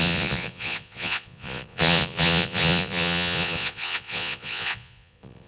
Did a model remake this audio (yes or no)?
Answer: yes